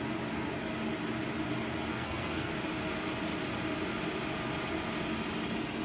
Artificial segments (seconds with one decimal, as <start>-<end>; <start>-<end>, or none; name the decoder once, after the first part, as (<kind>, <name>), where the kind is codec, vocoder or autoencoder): 1.9-2.5 (codec, SNAC)

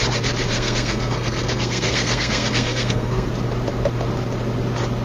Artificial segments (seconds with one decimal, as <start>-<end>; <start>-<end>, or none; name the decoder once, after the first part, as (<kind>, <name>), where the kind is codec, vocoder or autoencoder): 0.5-3.3 (codec, SNAC)

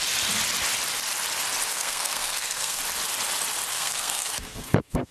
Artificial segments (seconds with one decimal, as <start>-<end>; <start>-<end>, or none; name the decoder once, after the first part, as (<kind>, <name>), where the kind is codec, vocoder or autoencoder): 1.7-2.8 (codec, SNAC); 3.7-5.1